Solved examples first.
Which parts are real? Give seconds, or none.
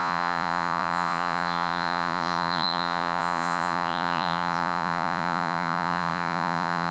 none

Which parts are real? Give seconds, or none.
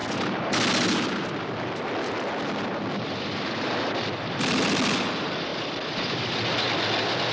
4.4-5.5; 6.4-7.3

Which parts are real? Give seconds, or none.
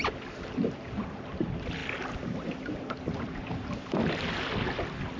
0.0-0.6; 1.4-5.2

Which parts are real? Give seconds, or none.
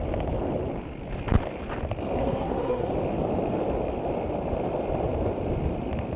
0.0-2.2; 2.9-6.2